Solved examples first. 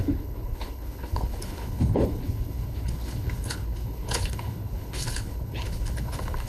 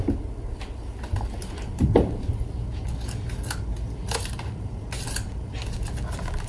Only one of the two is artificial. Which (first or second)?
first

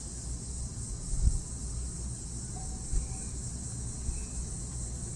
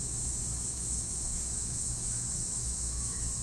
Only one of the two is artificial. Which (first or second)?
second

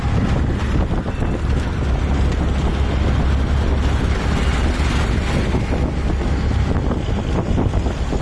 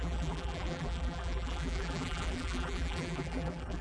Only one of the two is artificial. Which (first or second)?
second